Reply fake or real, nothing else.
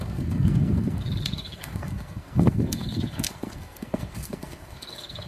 fake